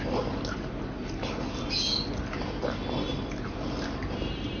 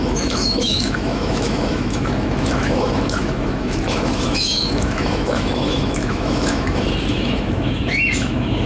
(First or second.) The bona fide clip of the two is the first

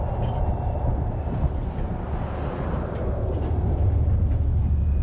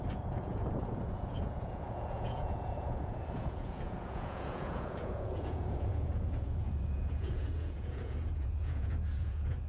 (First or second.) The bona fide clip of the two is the first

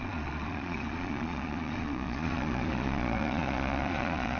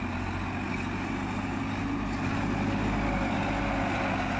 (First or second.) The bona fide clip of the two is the second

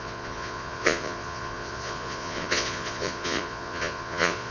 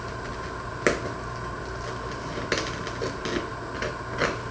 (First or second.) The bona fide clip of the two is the second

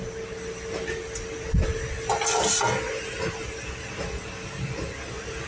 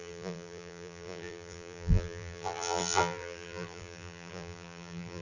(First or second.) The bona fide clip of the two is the first